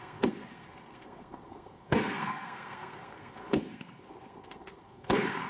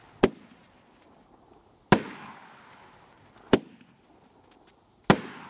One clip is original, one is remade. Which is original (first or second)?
second